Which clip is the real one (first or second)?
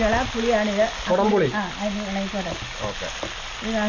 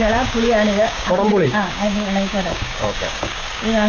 first